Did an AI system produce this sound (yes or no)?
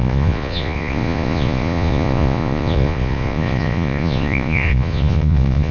yes